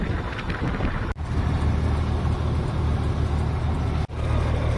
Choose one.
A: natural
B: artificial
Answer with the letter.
A